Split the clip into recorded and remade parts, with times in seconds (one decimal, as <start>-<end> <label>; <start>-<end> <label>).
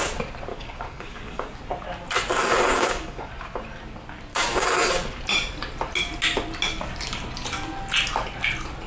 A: 0.0-0.5 recorded; 0.5-1.6 remade; 1.6-2.7 recorded; 2.7-3.3 remade; 3.3-4.3 recorded; 4.3-4.9 remade; 4.9-8.9 recorded